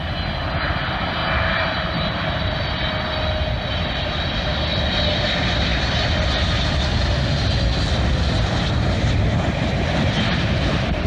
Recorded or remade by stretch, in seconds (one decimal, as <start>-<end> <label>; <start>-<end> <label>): 0.0-1.2 recorded; 1.2-2.7 remade; 2.7-11.1 recorded